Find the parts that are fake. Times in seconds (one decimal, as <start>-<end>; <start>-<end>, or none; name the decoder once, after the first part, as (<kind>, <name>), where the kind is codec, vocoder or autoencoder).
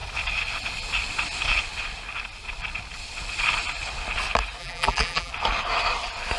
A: 4.6-5.3 (vocoder, BigVGAN v2)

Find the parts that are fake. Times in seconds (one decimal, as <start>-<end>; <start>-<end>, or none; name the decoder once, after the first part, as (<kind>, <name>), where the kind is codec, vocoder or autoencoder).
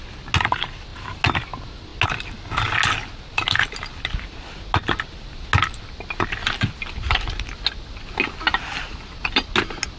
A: none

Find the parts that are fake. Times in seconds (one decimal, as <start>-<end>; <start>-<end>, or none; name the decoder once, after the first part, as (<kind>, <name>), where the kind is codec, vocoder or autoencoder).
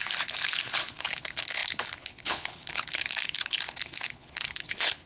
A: 0.0-5.1 (codec, HILCodec)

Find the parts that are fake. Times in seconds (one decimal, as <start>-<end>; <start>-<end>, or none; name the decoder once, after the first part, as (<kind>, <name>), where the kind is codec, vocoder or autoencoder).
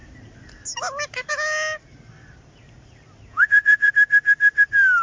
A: 3.3-3.9 (vocoder, Vocos)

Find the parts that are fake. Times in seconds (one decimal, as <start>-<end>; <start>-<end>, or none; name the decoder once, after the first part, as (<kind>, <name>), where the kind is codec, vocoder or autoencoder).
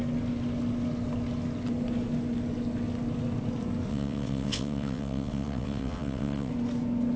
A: 3.9-6.5 (vocoder, WaveNeXt)